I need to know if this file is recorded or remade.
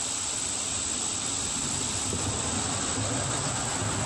recorded